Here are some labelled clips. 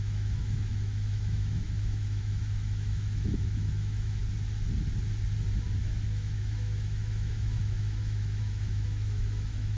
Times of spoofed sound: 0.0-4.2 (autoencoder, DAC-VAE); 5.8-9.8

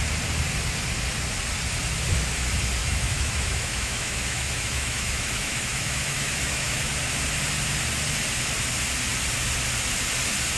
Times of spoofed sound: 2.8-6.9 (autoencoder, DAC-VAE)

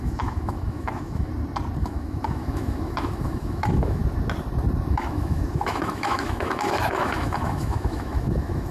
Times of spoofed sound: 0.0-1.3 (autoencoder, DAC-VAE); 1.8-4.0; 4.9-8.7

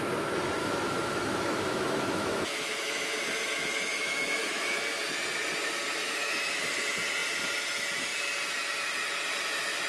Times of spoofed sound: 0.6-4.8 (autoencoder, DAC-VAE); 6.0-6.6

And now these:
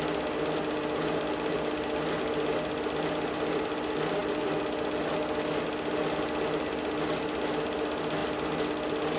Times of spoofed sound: none

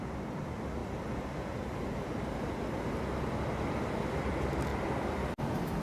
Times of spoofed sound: none

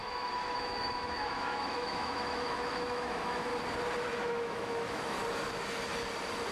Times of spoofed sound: 0.0-3.5 (autoencoder, DAC-VAE); 4.3-5.2